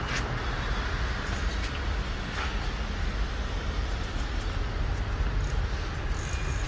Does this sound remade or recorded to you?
recorded